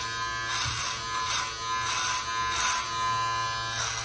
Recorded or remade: recorded